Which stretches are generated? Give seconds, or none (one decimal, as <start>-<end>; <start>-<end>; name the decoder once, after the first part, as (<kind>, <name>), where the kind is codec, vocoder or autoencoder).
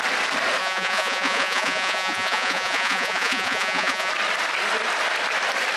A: 0.6-4.1 (vocoder, Vocos)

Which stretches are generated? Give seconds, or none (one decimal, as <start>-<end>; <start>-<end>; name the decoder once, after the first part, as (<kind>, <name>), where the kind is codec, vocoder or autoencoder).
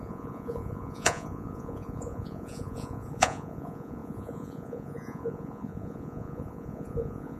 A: 0.0-7.4 (vocoder, Vocos)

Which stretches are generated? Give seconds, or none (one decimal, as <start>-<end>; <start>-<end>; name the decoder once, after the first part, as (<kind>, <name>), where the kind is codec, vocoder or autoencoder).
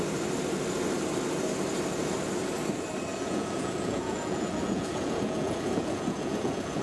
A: 3.1-6.8 (vocoder, Vocos)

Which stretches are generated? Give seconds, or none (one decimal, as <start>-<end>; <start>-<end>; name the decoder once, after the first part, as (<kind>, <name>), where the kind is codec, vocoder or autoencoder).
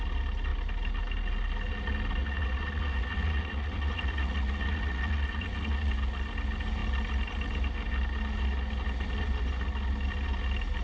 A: 2.2-5.9 (vocoder, Vocos)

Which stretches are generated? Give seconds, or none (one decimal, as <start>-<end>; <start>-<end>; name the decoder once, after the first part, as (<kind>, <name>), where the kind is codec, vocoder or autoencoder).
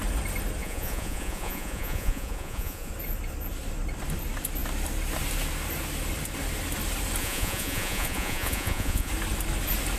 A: 0.6-2.9 (vocoder, Vocos); 7.2-9.1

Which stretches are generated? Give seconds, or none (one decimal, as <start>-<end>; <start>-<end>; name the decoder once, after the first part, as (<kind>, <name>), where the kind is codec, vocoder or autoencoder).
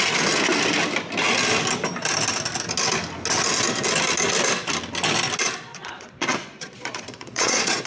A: 5.7-7.9 (vocoder, Vocos)